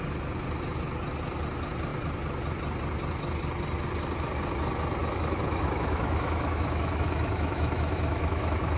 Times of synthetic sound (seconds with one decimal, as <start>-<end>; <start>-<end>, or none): 5.0-8.8